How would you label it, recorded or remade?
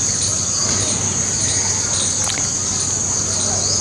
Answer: recorded